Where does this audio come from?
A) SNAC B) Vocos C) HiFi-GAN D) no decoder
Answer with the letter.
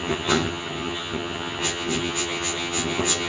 C